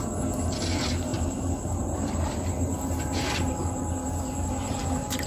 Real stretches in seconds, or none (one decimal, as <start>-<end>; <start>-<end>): 0.0-1.1; 3.3-5.3